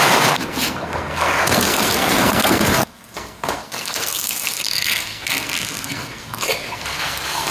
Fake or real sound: fake